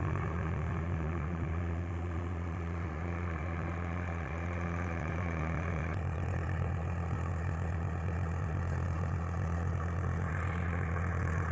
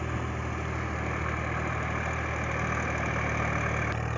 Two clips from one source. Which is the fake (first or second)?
first